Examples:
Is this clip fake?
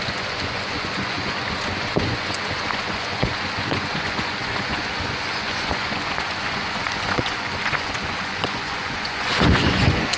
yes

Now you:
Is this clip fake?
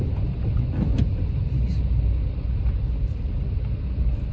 no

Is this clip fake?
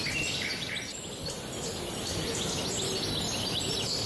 no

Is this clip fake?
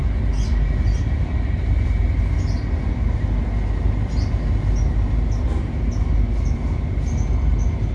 no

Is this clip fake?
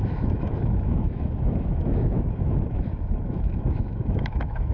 yes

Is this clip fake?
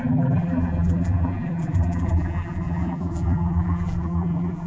yes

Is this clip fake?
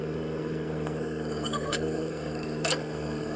yes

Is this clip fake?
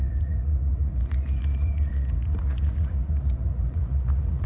yes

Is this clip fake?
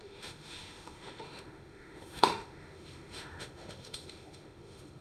yes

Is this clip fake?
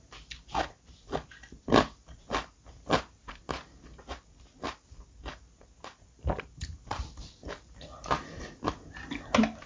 no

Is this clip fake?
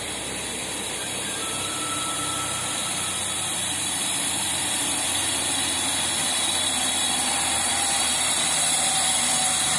yes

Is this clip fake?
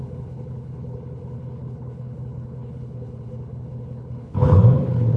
yes